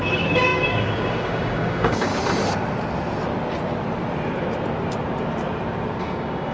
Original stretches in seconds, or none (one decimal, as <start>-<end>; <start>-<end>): 2.1-6.0